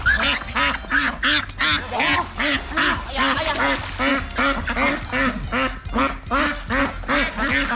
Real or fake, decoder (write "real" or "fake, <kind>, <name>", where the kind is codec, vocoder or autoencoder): real